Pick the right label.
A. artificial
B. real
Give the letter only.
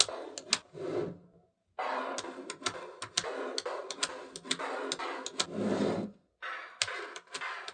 B